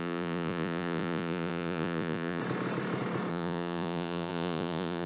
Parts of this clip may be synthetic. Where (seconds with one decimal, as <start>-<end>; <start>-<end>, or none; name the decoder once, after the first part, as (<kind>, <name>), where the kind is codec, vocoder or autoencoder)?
0.0-2.4 (vocoder, Vocos); 3.3-5.1